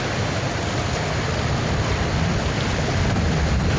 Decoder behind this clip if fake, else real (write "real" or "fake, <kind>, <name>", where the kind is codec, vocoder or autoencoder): real